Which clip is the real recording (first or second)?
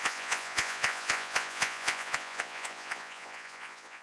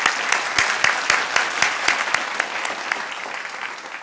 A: second